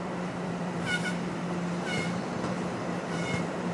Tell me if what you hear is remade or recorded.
remade